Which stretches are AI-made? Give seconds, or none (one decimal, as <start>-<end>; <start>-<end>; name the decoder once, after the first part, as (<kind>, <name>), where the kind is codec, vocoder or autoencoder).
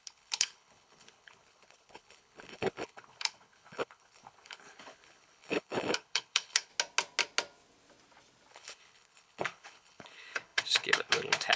0.0-6.7 (codec, HILCodec); 8.5-11.6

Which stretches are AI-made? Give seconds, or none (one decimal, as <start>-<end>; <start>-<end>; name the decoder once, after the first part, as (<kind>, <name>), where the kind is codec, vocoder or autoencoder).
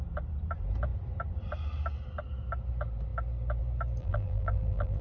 4.0-5.0 (vocoder, BigVGAN v2)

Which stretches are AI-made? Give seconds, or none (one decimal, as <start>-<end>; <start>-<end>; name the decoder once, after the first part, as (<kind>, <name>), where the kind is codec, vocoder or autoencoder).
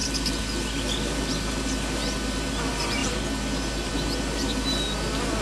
none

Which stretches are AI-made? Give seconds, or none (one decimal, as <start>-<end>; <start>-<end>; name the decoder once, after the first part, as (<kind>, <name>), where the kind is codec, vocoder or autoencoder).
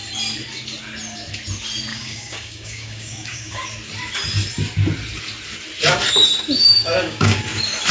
1.9-3.7 (codec, DAC); 6.6-7.4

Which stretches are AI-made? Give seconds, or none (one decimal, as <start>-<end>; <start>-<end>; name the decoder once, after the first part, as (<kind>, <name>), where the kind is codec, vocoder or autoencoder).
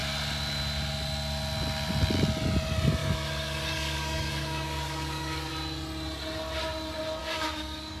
3.0-5.5 (codec, DAC); 7.2-8.0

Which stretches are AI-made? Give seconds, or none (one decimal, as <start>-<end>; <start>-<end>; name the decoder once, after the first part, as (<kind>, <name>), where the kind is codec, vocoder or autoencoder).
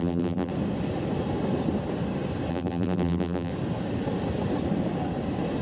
0.0-0.5 (vocoder, BigVGAN v2); 2.5-3.5